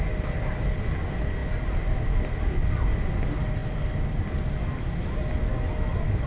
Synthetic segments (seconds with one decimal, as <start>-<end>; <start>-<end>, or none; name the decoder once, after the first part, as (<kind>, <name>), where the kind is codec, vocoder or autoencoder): none